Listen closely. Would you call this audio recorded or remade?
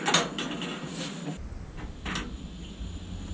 recorded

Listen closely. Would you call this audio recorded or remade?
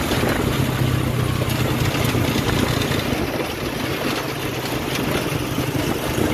recorded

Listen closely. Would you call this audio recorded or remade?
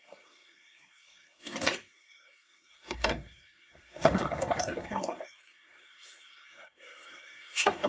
remade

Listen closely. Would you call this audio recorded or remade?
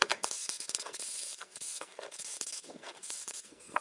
remade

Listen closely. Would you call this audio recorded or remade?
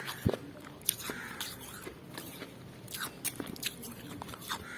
recorded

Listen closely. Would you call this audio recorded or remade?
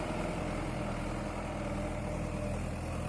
recorded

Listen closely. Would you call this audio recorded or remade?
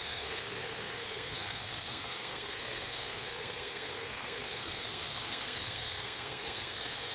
remade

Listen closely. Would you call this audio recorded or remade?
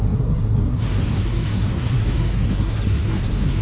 remade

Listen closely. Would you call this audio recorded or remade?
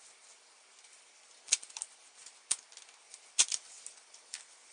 recorded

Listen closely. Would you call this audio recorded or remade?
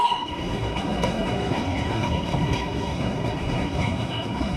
remade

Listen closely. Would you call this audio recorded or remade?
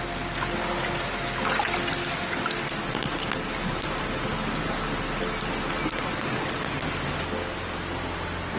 recorded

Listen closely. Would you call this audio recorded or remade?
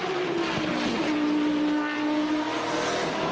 recorded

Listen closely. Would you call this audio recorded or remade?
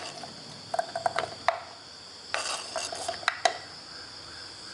recorded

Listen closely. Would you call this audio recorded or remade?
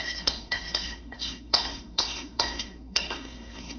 remade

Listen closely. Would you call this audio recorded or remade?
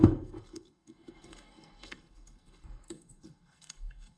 remade